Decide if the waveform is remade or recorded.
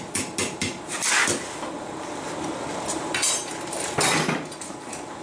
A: recorded